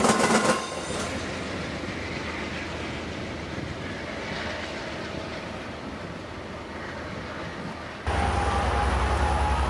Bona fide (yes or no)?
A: yes